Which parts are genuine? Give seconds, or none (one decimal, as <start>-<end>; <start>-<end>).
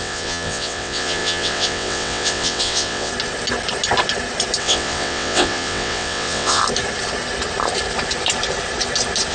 3.1-4.6; 6.6-9.3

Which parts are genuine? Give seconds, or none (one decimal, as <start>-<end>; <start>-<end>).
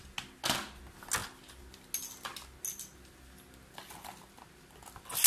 0.0-5.3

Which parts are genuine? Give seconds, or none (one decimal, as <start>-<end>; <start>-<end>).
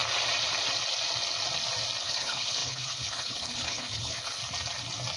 0.0-2.0; 4.4-5.2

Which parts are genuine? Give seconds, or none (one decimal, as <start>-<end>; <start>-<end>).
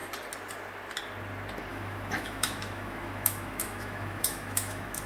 0.0-1.7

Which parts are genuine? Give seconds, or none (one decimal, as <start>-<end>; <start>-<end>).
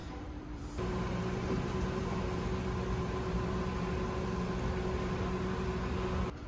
2.4-6.5